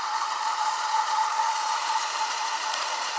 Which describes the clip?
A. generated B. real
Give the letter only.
A